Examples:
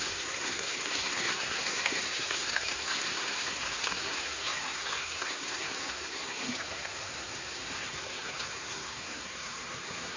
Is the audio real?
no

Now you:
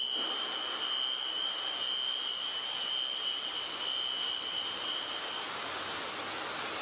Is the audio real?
yes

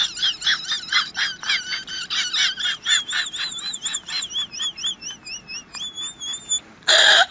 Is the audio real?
yes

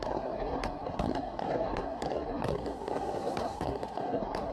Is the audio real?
no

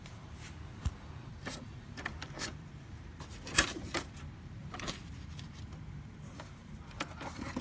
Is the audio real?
no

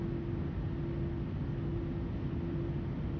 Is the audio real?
yes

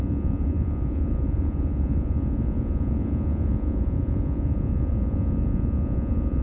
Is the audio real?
no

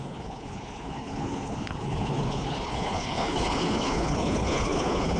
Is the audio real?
no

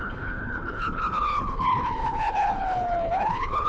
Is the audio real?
no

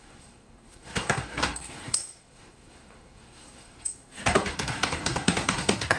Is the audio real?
no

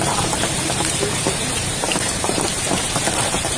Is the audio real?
no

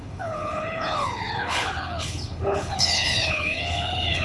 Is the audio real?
no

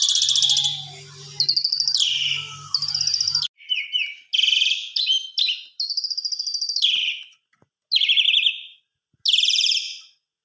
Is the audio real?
yes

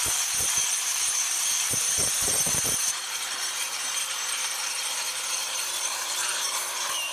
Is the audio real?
no